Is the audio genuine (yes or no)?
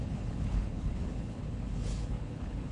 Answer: no